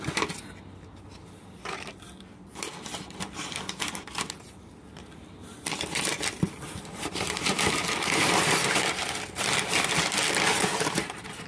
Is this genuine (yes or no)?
no